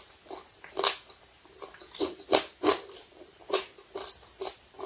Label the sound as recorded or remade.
remade